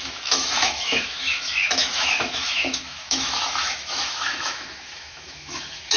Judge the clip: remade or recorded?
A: remade